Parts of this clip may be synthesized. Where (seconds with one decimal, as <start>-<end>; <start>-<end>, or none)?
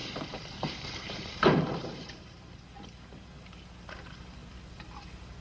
0.0-1.4; 1.8-2.6